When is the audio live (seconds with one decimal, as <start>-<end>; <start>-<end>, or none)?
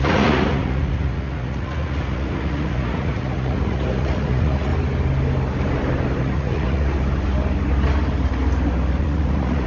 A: 4.7-6.2; 6.9-9.0